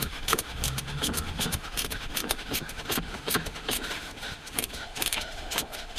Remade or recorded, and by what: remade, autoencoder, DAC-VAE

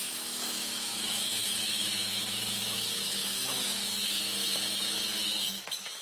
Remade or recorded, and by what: remade, autoencoder, DAC-VAE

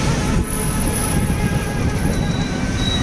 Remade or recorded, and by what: recorded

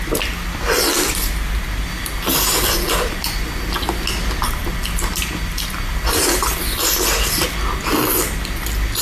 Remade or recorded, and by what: recorded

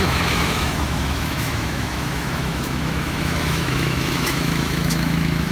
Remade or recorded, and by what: remade, autoencoder, DAC-VAE